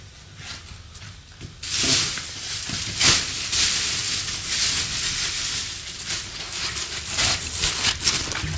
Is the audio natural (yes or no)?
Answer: yes